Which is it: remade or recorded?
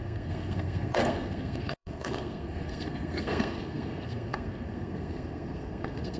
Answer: remade